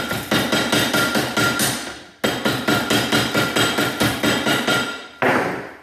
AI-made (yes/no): no